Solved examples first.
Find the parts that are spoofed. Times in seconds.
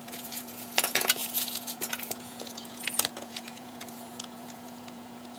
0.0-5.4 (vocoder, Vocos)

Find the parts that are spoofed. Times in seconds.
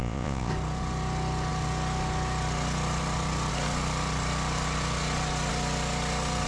0.0-0.5 (vocoder, Vocos)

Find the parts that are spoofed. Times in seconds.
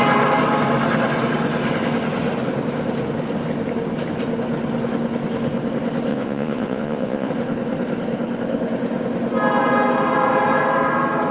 6.1-7.3 (vocoder, Vocos)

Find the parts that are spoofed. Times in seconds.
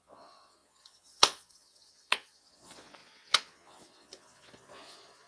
0.0-5.3 (vocoder, Vocos)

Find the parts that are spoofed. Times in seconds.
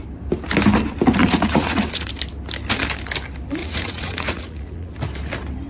1.2-2.1 (vocoder, Vocos); 3.6-4.9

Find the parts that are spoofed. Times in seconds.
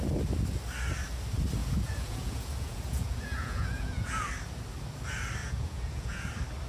1.6-4.3 (vocoder, Vocos); 5.4-6.3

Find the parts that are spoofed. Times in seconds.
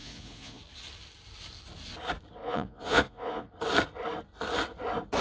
0.0-0.6 (vocoder, Vocos); 2.4-3.5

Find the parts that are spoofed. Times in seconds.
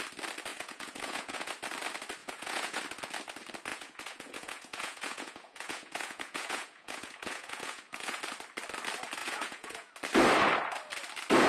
0.5-1.5 (vocoder, Vocos); 2.2-2.8; 3.7-8.2; 9.2-9.9